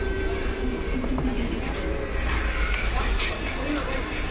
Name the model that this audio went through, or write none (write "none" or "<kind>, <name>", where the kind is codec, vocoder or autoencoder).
none